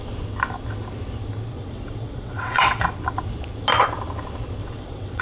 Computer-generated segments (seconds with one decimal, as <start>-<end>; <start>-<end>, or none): 1.5-3.0; 4.6-5.2